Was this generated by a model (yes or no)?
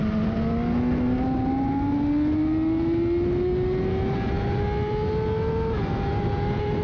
no